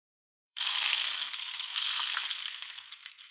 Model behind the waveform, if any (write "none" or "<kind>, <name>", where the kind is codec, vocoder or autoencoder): codec, SNAC